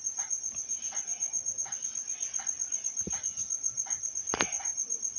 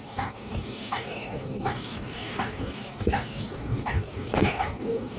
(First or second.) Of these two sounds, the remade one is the second